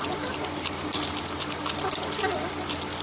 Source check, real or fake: real